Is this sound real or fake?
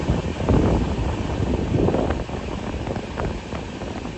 real